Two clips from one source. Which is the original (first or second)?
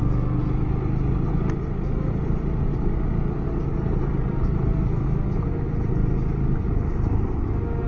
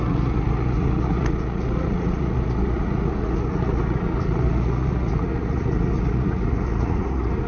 first